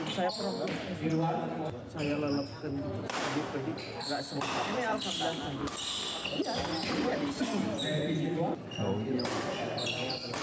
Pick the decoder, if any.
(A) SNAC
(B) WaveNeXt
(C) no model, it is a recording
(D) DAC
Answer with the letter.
C